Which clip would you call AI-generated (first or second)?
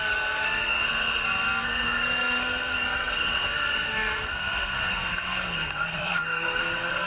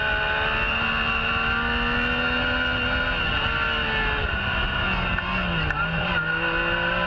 first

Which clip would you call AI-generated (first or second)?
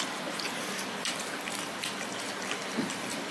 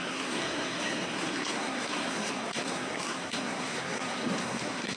second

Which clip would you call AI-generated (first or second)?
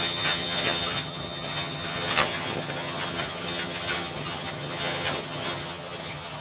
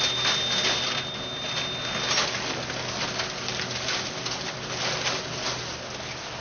first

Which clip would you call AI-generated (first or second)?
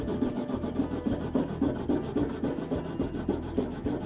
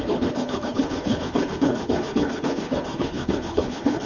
second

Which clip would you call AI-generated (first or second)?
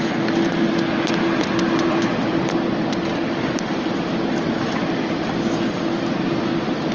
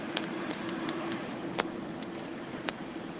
second